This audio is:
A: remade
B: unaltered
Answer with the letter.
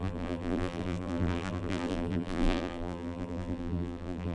A